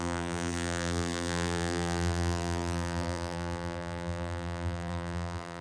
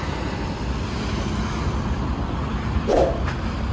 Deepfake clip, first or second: first